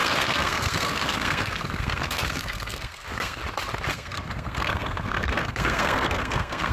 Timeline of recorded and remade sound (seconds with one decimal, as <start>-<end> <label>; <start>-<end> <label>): 0.0-3.4 remade; 3.4-3.9 recorded; 3.9-6.7 remade